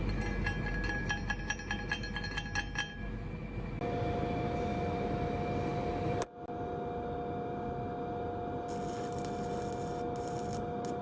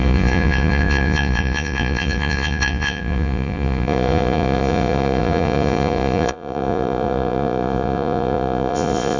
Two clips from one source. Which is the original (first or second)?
first